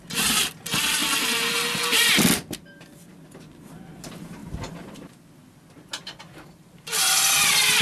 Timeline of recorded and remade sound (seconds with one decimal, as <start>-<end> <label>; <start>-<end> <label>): 0.0-7.8 recorded